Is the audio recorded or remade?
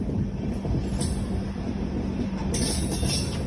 recorded